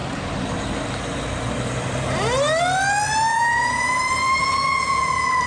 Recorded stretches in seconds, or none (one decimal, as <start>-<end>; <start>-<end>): 0.0-3.3; 4.0-4.4; 5.1-5.5